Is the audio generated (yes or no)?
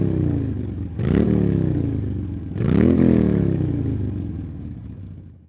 yes